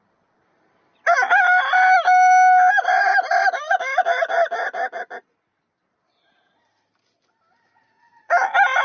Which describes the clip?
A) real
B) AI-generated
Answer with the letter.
A